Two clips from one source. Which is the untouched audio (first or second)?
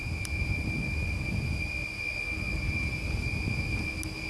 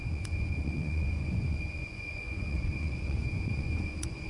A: first